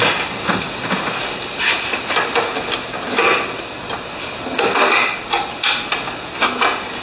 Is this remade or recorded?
recorded